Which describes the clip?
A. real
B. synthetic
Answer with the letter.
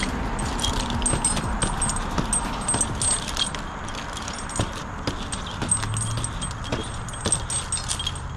A